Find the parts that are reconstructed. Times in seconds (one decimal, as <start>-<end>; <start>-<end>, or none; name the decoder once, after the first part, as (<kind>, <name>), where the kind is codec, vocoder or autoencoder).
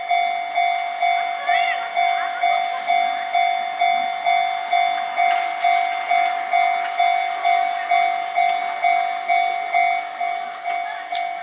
none